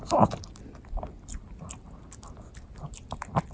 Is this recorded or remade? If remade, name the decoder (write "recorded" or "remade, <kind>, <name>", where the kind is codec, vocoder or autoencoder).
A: recorded